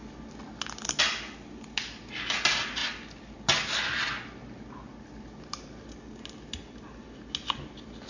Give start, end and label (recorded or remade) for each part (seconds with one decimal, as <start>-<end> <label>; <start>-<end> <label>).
0.0-8.1 recorded